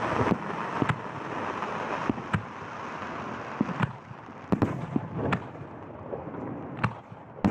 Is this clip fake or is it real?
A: real